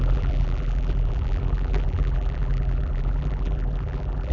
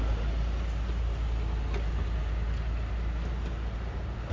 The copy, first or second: first